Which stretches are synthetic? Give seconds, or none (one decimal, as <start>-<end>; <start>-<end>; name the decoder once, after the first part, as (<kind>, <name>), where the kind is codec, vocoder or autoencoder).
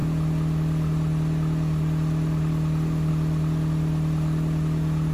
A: none